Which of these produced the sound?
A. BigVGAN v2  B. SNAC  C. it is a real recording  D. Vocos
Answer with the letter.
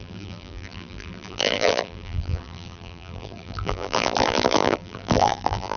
A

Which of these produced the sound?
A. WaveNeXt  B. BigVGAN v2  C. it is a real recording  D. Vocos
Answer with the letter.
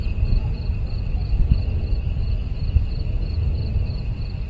C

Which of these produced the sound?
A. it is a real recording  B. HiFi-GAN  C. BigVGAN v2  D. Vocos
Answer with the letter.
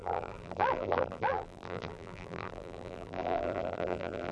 C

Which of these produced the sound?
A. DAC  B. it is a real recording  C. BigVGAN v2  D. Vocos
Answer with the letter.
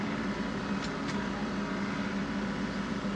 B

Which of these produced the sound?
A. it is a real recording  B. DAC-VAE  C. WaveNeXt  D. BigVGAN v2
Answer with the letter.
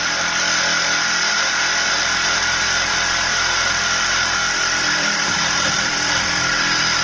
D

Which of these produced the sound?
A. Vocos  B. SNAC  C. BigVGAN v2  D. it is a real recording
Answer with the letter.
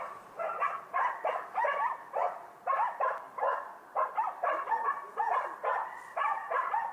D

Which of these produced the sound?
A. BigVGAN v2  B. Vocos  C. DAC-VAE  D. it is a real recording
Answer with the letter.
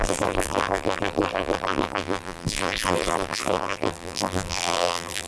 A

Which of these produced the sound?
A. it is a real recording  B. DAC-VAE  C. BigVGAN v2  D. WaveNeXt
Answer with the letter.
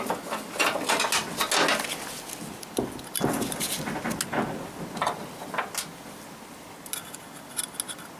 A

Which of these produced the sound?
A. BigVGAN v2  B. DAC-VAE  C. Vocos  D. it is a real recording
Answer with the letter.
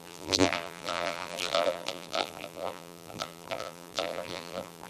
A